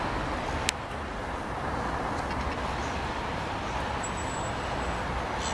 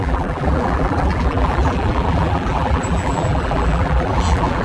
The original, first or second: first